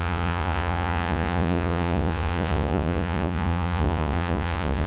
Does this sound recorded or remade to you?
remade